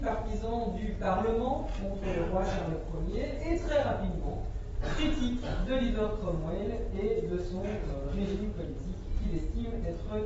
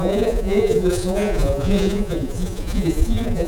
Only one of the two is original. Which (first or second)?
first